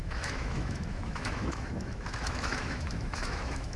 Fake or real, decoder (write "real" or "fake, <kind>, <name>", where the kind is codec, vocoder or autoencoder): fake, autoencoder, DAC-VAE